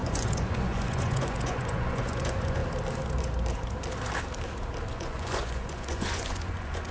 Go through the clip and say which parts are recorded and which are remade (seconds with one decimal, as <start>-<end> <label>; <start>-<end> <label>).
0.0-2.6 remade; 2.6-4.9 recorded; 4.9-6.9 remade